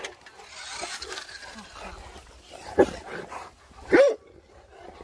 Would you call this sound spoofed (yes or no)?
no